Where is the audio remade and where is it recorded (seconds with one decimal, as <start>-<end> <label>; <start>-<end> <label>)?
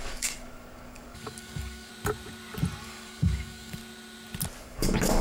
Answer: 0.0-1.9 remade; 1.9-2.8 recorded; 2.8-3.8 remade; 3.8-4.6 recorded; 4.6-5.2 remade